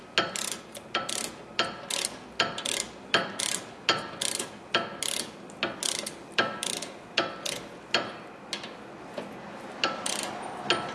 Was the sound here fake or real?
real